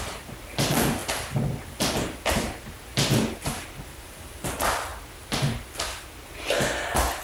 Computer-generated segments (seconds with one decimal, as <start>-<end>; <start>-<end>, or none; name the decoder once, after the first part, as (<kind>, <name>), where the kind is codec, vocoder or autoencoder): 0.0-1.0 (vocoder, BigVGAN v2); 3.8-4.9